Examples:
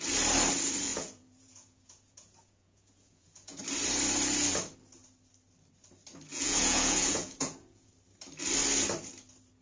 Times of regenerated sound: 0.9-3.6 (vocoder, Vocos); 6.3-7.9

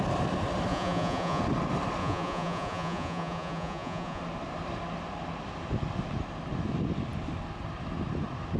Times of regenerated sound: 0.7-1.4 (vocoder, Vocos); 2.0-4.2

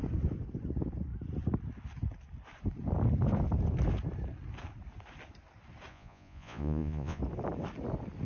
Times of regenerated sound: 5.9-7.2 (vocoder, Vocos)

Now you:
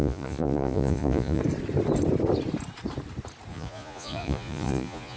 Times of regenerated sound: 0.0-1.4 (vocoder, Vocos); 3.5-5.2

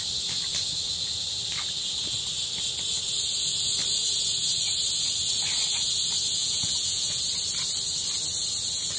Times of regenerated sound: 6.4-7.2 (vocoder, Vocos)